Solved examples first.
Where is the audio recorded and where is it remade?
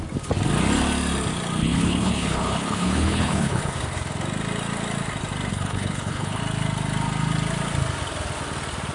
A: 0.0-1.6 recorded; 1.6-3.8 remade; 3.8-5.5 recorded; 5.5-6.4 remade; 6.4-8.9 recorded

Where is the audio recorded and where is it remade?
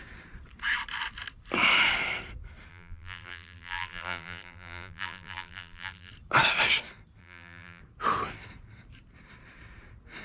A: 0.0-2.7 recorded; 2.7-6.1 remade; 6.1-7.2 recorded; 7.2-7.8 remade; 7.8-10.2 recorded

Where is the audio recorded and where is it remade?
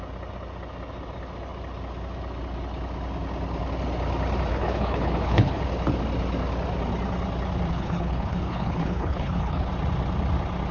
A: 0.0-4.5 recorded; 4.5-5.6 remade; 5.6-7.7 recorded; 7.7-9.7 remade; 9.7-10.7 recorded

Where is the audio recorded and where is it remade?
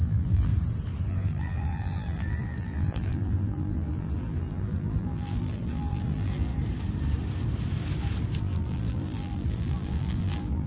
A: 0.0-0.5 remade; 0.5-1.1 recorded; 1.1-6.5 remade; 6.5-8.4 recorded; 8.4-10.7 remade